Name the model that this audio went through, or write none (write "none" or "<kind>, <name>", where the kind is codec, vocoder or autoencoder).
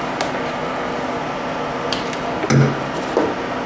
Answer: none